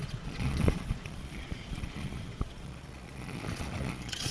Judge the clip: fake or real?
fake